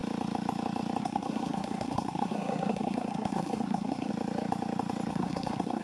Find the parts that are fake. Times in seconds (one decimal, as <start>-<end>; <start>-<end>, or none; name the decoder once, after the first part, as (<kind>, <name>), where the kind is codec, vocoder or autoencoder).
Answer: 1.0-4.1 (codec, SNAC); 5.1-5.8